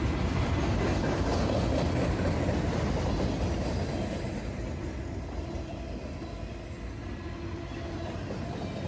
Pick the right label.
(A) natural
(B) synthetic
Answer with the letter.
A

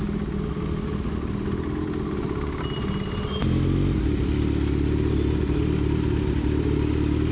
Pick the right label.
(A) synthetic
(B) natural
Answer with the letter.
B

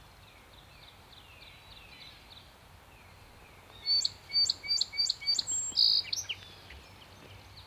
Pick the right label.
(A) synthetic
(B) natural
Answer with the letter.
B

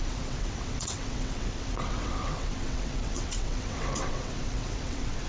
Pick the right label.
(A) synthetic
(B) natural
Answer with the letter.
A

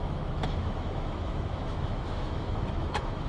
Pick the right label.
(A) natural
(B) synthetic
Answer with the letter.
B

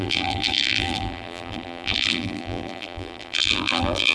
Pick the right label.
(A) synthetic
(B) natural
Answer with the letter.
A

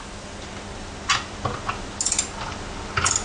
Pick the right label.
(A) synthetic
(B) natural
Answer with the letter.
B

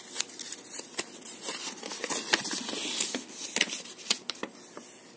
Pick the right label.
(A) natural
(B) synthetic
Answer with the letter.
A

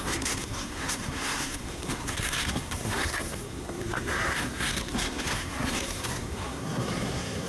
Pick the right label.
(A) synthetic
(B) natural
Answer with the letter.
A